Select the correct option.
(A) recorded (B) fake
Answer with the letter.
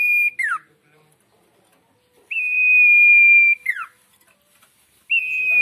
A